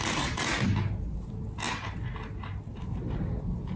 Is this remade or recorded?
recorded